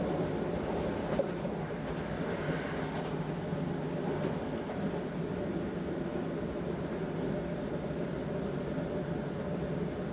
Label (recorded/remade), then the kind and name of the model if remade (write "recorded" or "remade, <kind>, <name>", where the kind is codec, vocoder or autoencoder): recorded